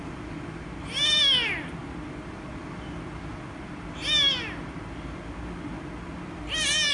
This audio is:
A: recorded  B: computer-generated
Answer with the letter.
A